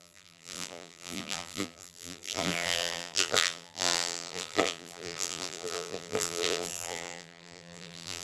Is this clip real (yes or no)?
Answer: no